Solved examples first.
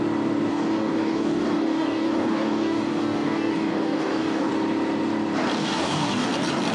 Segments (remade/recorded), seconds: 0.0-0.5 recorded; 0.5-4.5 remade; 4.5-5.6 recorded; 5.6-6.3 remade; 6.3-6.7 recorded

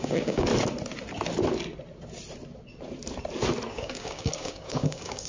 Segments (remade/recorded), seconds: 0.0-0.5 remade; 0.5-3.7 recorded; 3.7-5.3 remade

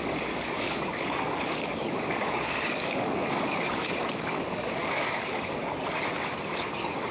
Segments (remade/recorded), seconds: 0.0-5.6 remade; 5.6-6.6 recorded; 6.6-7.1 remade